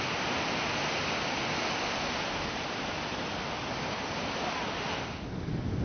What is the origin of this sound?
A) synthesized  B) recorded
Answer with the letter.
B